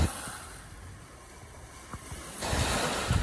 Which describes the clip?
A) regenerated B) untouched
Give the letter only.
B